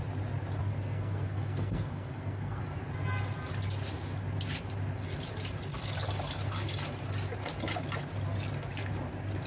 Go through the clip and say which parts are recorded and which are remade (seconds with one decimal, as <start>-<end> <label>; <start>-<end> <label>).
0.0-0.6 recorded; 0.6-2.6 remade; 2.6-9.5 recorded